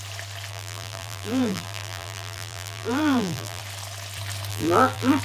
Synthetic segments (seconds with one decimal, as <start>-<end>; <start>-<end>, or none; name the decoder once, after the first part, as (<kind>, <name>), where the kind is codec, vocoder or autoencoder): 0.5-3.6 (vocoder, BigVGAN v2); 4.5-5.2